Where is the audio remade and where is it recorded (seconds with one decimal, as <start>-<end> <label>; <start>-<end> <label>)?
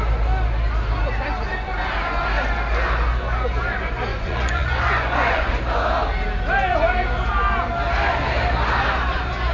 0.0-4.1 recorded; 4.1-5.5 remade; 5.5-9.5 recorded